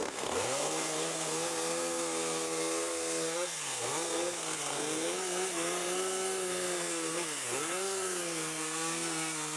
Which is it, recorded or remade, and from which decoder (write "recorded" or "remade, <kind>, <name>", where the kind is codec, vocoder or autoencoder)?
remade, codec, SNAC